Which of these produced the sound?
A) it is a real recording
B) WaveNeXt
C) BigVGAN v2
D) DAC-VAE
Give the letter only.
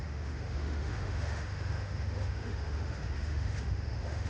D